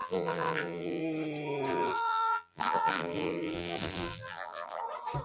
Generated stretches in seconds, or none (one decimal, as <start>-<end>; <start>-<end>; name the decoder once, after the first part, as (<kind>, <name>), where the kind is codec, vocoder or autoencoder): 0.0-1.0 (vocoder, BigVGAN v2); 1.7-4.8